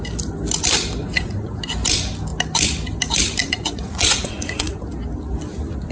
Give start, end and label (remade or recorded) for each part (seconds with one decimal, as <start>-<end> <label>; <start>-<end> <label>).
0.0-1.0 recorded; 1.0-1.6 remade; 1.6-3.4 recorded; 3.4-4.7 remade; 4.7-5.9 recorded